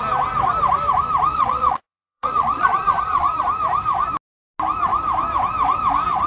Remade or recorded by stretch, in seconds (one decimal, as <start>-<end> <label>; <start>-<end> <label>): 0.0-1.3 recorded; 1.3-3.4 remade; 3.4-6.3 recorded

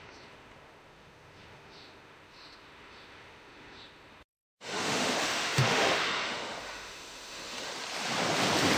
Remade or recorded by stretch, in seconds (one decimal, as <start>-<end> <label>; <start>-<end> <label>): 0.0-7.7 remade; 7.7-8.8 recorded